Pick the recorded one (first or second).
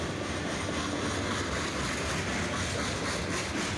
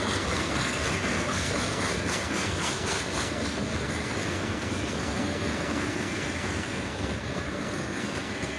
first